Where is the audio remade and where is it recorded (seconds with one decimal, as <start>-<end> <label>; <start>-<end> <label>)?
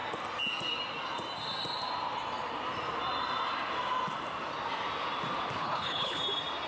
0.0-5.6 recorded; 5.6-6.2 remade; 6.2-6.7 recorded